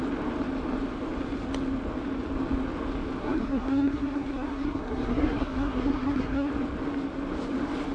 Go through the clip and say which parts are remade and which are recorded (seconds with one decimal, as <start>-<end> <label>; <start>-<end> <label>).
0.0-3.2 recorded; 3.2-6.5 remade; 6.5-7.9 recorded